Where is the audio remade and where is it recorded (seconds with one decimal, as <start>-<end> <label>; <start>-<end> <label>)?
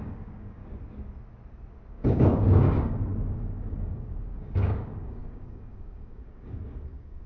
0.0-0.6 remade; 0.6-1.9 recorded; 1.9-7.3 remade